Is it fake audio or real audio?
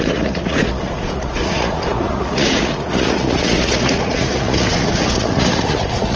fake